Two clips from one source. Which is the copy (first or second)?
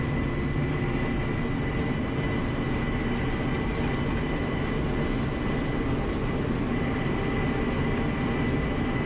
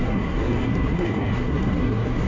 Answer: second